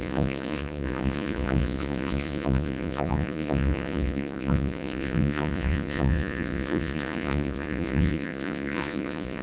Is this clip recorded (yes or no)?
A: no